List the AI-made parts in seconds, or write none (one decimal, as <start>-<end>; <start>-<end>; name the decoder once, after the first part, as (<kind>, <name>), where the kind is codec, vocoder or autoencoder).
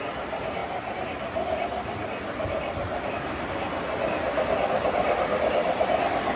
none